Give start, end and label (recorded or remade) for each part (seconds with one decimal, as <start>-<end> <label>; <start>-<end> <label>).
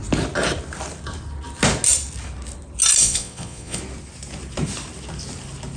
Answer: 0.0-3.0 recorded; 3.0-3.8 remade; 3.8-5.8 recorded